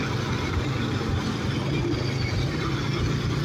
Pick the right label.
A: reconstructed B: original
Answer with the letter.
B